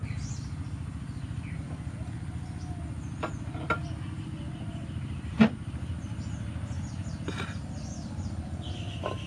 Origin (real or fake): real